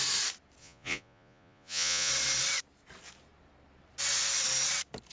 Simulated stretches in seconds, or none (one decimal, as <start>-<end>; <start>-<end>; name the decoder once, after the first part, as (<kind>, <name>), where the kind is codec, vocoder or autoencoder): 0.6-2.1 (vocoder, Vocos)